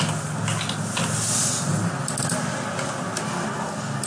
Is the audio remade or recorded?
recorded